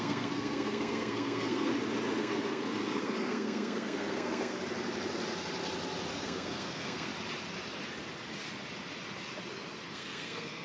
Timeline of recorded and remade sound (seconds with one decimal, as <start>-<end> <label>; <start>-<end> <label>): 0.0-1.7 remade; 1.7-2.2 recorded; 2.2-4.6 remade; 4.6-6.1 recorded; 6.1-7.1 remade; 7.1-9.9 recorded; 9.9-10.6 remade